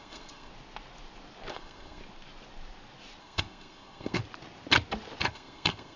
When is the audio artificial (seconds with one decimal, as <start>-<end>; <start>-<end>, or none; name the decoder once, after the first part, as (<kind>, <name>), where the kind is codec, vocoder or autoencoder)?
0.0-0.5 (codec, SNAC); 1.5-2.0; 3.2-4.2; 5.3-6.0